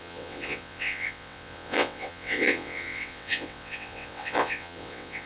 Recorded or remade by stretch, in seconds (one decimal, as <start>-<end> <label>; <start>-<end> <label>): 0.0-5.3 remade